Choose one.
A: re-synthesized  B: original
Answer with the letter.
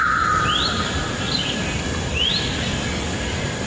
B